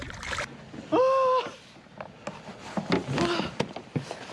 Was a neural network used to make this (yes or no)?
no